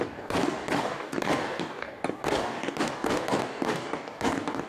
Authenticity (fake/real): fake